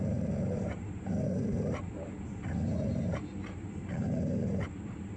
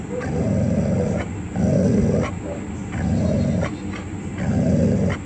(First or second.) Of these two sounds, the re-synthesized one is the first